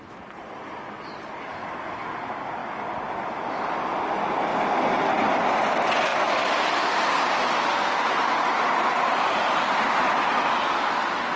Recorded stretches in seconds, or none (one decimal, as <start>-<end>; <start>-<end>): 0.0-2.6; 3.4-4.5; 5.4-11.4